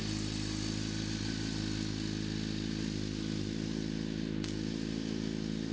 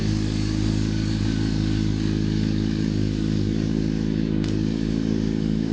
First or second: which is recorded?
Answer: first